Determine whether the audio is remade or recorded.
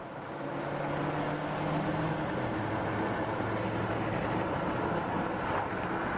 recorded